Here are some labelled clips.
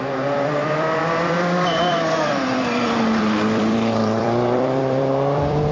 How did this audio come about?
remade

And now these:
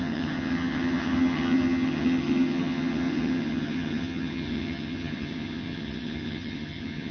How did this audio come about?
remade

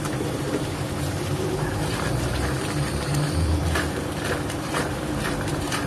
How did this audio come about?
remade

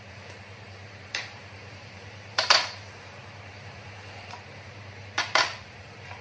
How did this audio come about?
remade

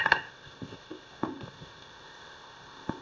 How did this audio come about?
remade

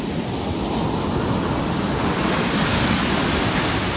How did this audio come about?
recorded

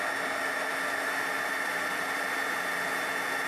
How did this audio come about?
recorded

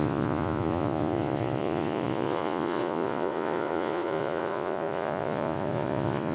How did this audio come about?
remade